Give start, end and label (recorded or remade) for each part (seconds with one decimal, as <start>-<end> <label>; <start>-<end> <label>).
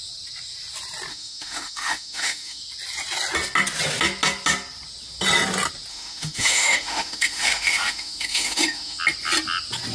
0.0-1.1 recorded; 1.1-2.6 remade; 2.6-5.9 recorded; 5.9-9.0 remade; 9.0-9.9 recorded